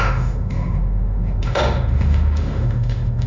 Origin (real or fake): fake